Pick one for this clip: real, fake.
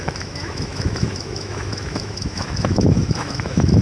fake